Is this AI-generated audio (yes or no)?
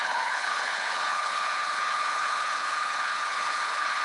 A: yes